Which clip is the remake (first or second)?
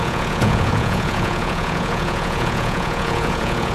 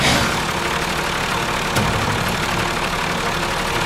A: first